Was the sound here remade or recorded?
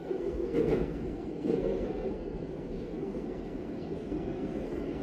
remade